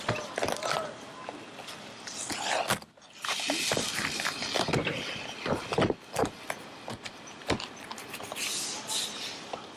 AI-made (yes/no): no